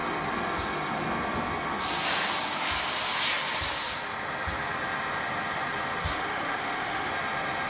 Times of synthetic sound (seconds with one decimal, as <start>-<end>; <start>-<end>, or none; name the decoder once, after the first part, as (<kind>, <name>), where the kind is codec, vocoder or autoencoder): 6.0-7.1 (autoencoder, DAC-VAE)